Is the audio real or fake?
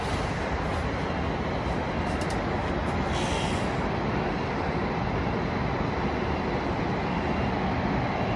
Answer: real